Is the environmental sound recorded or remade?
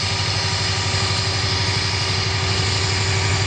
recorded